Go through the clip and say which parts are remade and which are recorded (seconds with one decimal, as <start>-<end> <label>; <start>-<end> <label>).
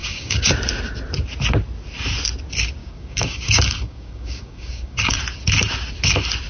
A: 0.0-0.5 remade; 0.5-2.8 recorded; 2.8-5.2 remade; 5.2-6.5 recorded